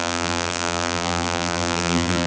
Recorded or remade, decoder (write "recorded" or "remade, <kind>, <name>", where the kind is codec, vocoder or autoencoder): remade, vocoder, BigVGAN v2